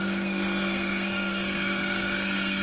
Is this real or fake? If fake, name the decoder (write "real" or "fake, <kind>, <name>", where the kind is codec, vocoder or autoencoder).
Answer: fake, codec, SNAC